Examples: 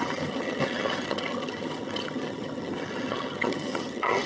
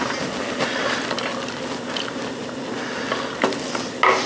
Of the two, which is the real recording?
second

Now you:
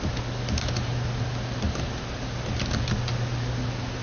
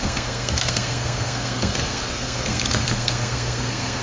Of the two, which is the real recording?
first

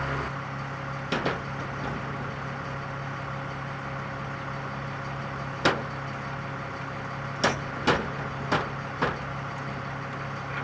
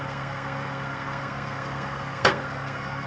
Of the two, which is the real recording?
first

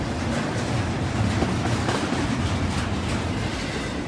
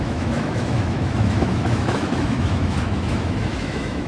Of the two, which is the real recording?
first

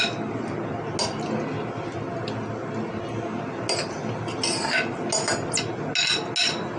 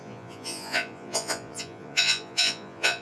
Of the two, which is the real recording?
first